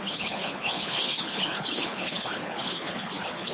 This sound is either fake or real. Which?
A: fake